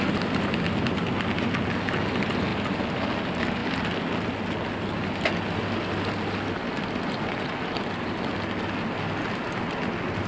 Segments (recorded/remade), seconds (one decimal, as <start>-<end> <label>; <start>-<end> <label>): 0.0-10.3 recorded